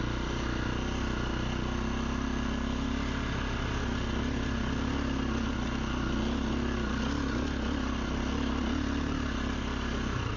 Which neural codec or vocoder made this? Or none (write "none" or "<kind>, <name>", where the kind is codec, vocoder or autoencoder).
none